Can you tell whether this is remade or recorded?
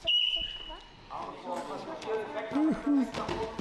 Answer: recorded